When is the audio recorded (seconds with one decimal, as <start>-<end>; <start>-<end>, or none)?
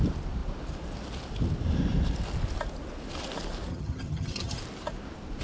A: 0.0-3.7; 4.6-5.4